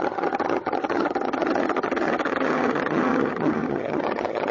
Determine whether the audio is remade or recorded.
remade